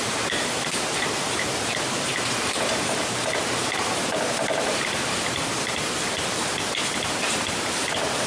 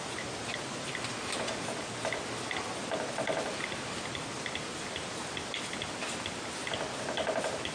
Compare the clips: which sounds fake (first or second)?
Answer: first